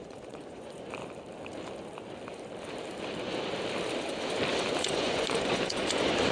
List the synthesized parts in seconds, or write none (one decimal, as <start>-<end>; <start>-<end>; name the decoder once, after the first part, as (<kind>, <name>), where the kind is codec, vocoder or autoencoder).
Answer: 0.0-1.0 (vocoder, Vocos); 4.8-6.3